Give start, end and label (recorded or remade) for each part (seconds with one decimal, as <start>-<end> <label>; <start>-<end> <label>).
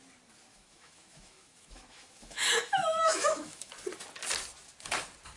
0.0-0.5 recorded; 0.5-3.7 remade; 3.7-5.4 recorded